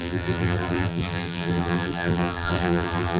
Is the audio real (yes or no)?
no